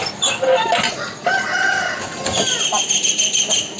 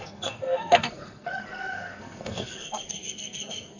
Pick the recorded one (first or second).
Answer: first